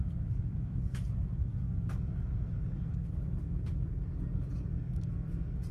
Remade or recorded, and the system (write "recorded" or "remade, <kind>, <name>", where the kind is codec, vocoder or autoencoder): remade, codec, SNAC